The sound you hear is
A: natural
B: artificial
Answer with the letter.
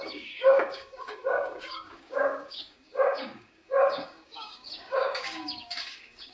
B